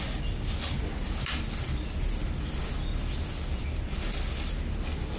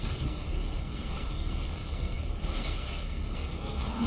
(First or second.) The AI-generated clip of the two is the second